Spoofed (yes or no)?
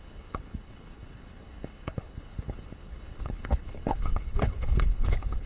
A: yes